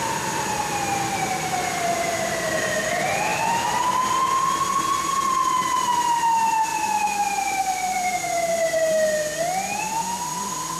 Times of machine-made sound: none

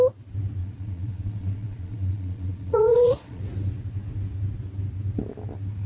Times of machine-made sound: 0.6-3.4 (vocoder, Vocos)

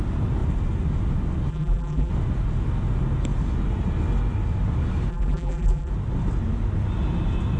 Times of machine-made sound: 1.5-2.1 (vocoder, BigVGAN v2); 5.1-5.9